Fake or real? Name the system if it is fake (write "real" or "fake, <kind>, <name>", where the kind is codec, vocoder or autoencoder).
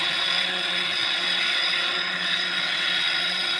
fake, vocoder, WaveNeXt